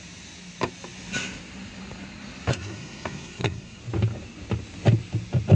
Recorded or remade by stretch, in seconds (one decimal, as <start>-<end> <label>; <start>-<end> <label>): 0.0-2.5 recorded; 2.5-3.8 remade; 3.8-5.5 recorded